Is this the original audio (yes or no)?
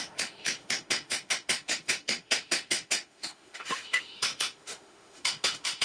no